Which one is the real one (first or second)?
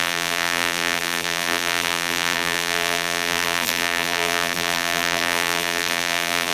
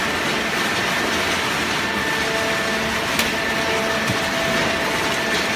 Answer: second